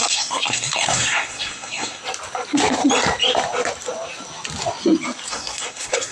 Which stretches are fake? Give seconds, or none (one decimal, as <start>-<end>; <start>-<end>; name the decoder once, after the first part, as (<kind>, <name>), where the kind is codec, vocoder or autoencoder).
0.0-2.0 (codec, SNAC); 5.3-6.1